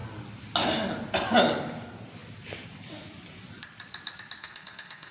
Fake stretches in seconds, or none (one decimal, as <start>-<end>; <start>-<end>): 4.4-5.1